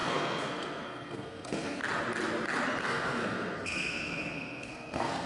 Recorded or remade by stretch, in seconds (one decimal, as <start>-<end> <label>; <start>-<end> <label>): 0.0-1.8 remade; 1.8-2.8 recorded; 2.8-5.3 remade